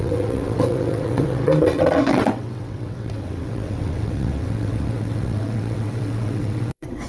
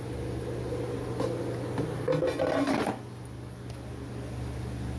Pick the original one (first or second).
second